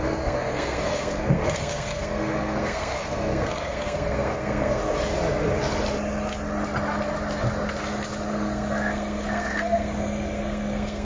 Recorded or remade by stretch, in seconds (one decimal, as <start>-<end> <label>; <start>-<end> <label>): 0.0-4.8 remade; 4.8-8.3 recorded; 8.3-11.0 remade